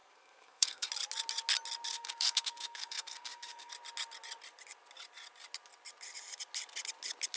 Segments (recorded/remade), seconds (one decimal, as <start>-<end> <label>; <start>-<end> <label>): 0.0-0.9 remade; 0.9-1.9 recorded; 1.9-3.7 remade; 3.7-7.4 recorded